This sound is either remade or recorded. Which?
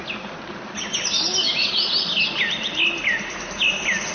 recorded